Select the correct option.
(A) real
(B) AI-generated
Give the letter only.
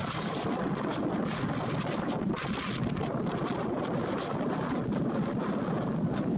A